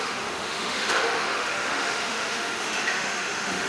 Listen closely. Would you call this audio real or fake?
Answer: fake